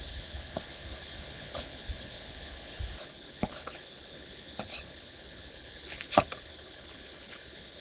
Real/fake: fake